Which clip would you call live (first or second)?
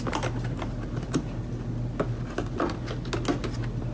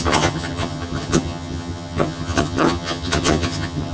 first